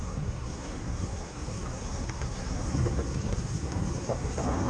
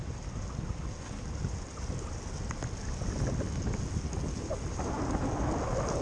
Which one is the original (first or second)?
second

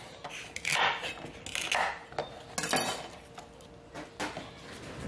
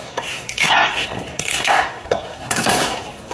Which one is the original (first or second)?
first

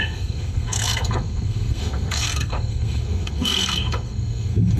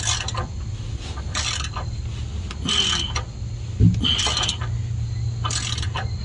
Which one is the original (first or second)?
second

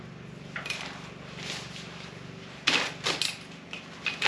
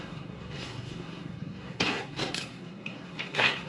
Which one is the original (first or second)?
first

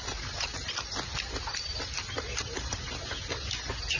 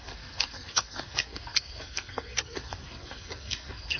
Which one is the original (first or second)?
first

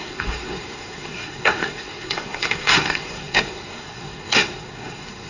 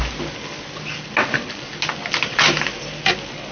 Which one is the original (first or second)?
second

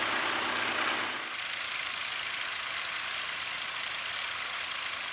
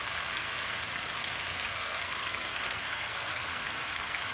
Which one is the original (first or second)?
first